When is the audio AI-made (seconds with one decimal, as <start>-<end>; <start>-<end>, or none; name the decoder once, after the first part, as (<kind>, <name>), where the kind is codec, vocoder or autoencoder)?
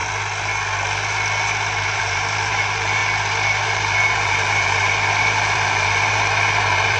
1.8-3.0 (vocoder, BigVGAN v2); 3.6-7.0